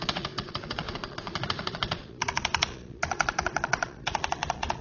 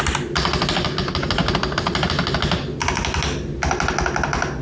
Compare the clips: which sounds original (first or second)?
second